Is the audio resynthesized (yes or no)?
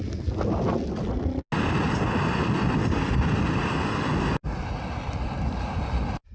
no